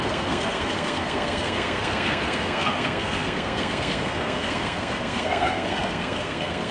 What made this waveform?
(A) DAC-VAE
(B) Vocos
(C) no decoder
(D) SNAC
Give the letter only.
D